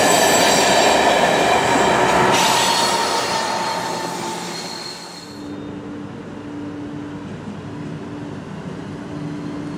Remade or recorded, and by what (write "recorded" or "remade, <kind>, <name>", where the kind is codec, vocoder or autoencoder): recorded